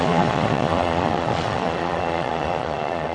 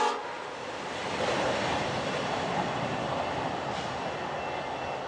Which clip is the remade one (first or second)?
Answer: first